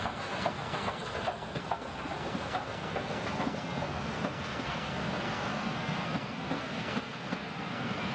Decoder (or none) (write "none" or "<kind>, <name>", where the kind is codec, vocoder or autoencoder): codec, SNAC